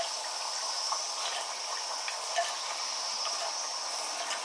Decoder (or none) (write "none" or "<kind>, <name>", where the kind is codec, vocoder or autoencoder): none